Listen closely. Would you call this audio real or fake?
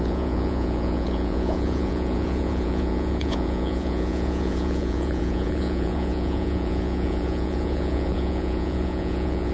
fake